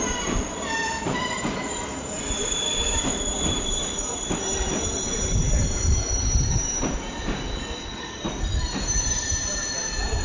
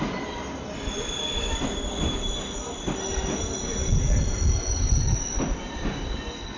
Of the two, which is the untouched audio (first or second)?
second